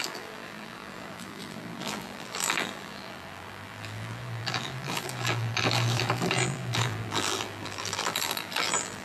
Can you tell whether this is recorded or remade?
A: remade